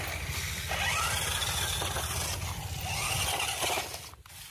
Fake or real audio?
real